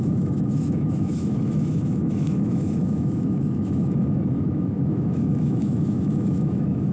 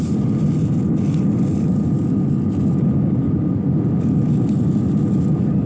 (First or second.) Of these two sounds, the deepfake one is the first